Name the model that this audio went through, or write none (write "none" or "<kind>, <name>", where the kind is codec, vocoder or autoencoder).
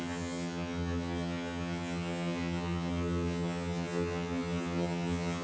vocoder, HiFi-GAN